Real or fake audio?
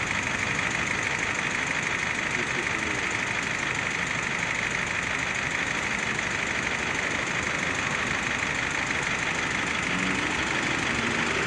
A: real